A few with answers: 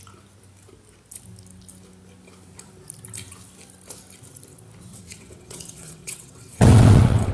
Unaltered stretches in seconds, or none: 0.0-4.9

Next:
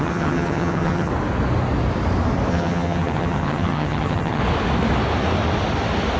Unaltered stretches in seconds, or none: 1.1-2.5; 4.4-6.2

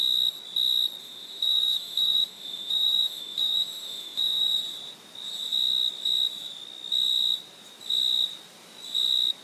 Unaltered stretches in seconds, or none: 0.0-1.0; 4.6-9.4

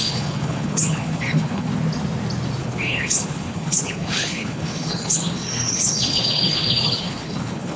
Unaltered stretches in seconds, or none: 1.7-2.6

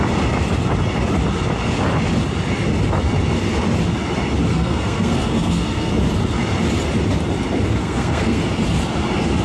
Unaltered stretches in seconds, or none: 0.0-4.5; 5.9-7.8; 8.4-9.4

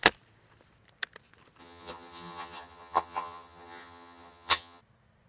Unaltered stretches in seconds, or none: 0.0-1.6; 4.8-5.3